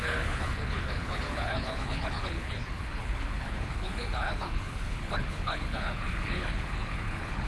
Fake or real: fake